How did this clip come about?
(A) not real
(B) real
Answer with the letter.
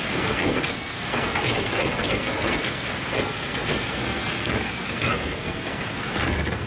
A